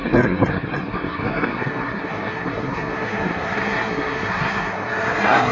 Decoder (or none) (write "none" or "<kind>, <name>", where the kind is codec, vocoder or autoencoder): codec, SNAC